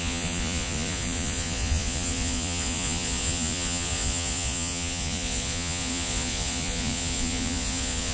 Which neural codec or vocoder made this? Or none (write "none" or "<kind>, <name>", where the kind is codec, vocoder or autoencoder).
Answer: vocoder, Vocos